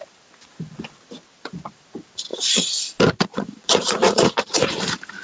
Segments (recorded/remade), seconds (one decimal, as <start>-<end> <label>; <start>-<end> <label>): 0.0-2.3 recorded; 2.3-2.8 remade; 2.8-3.3 recorded; 3.3-4.7 remade; 4.7-5.2 recorded

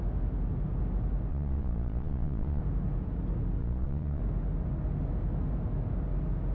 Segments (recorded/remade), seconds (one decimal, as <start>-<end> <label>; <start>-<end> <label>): 0.0-1.3 recorded; 1.3-2.6 remade; 2.6-3.6 recorded; 3.6-4.2 remade; 4.2-6.5 recorded

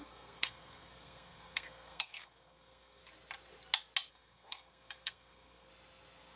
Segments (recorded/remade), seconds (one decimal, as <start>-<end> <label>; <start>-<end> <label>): 0.0-3.0 remade; 3.0-4.1 recorded; 4.1-5.7 remade; 5.7-6.4 recorded

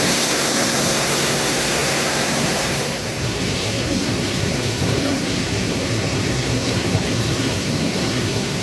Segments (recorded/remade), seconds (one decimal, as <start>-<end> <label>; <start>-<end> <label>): 0.0-8.6 remade

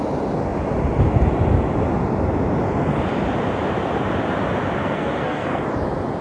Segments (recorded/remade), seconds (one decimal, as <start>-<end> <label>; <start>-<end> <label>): 0.0-4.8 recorded; 4.8-5.6 remade; 5.6-6.2 recorded

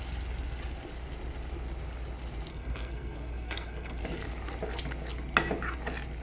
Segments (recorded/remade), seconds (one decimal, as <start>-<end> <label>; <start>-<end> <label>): 0.0-2.5 recorded; 2.5-4.0 remade; 4.0-6.2 recorded

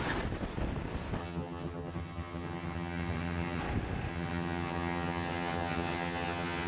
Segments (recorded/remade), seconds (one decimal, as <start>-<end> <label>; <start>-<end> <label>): 0.0-1.2 recorded; 1.2-3.6 remade; 3.6-4.1 recorded; 4.1-6.7 remade

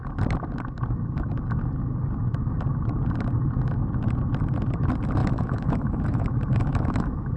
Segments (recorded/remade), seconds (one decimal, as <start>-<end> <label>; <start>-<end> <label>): 0.0-5.2 recorded; 5.2-7.4 remade